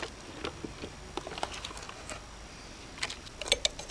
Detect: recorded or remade recorded